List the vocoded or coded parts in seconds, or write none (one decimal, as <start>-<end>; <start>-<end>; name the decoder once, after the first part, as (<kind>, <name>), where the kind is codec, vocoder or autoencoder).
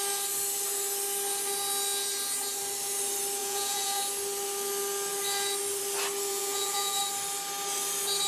3.4-4.0 (vocoder, Vocos); 6.3-7.0